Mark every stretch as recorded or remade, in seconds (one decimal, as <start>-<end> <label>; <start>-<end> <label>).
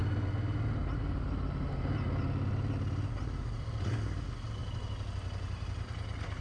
0.0-6.4 recorded